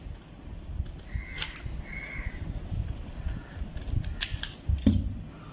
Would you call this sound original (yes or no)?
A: yes